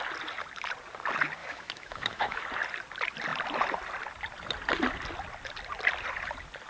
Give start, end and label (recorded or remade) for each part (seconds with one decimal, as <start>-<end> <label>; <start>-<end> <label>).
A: 0.0-1.4 recorded; 1.4-2.4 remade; 2.4-6.7 recorded